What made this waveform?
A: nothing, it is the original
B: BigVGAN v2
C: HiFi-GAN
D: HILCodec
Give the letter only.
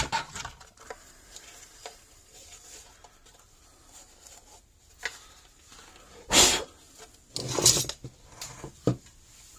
A